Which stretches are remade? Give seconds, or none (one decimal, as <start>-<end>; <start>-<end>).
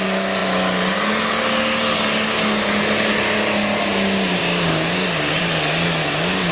4.4-5.4; 6.0-6.5